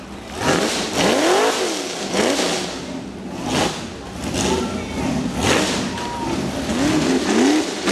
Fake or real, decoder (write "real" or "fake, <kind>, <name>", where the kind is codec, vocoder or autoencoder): real